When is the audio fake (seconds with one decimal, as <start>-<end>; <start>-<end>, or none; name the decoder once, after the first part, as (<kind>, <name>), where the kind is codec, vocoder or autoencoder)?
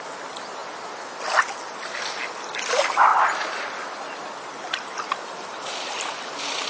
none